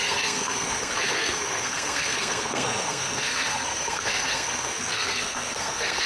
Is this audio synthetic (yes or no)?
yes